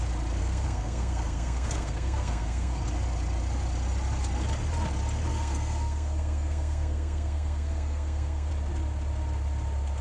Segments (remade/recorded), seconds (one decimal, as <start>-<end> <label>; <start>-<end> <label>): 0.0-0.4 recorded; 0.4-2.8 remade; 2.8-5.3 recorded; 5.3-8.5 remade; 8.5-10.0 recorded